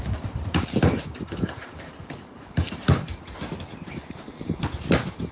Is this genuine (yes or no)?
no